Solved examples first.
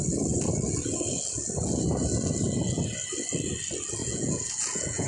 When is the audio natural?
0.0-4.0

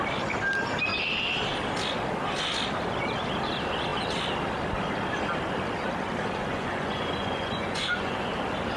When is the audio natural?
0.0-6.4; 8.3-8.8

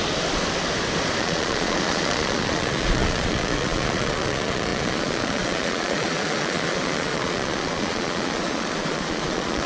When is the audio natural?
0.0-1.2

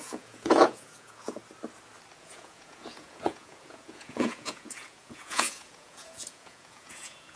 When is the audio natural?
1.4-2.2

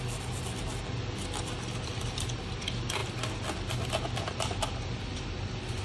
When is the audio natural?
0.0-5.8

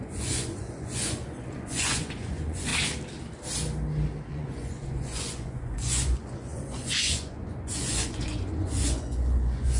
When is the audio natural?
2.7-4.3